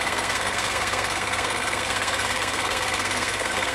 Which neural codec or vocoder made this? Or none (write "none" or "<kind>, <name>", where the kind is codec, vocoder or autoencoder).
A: codec, SNAC